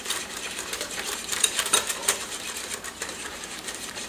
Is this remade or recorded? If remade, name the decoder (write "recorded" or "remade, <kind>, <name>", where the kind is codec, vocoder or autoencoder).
remade, vocoder, BigVGAN v2